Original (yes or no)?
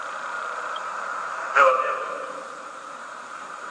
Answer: no